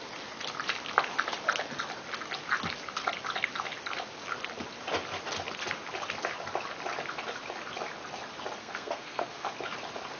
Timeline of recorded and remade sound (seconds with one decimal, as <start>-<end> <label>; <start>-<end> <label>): 0.0-8.6 recorded; 8.6-9.5 remade; 9.5-10.2 recorded